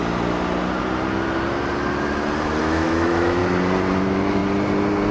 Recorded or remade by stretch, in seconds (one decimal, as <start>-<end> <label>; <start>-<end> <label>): 0.0-2.6 recorded; 2.6-3.4 remade; 3.4-4.0 recorded; 4.0-4.4 remade; 4.4-5.1 recorded